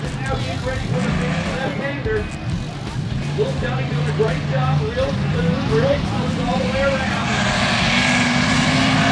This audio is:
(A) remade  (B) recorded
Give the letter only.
B